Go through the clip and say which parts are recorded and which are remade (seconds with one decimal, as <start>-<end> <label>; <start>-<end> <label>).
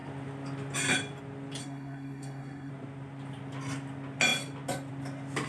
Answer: 0.0-1.6 recorded; 1.6-2.7 remade; 2.7-5.5 recorded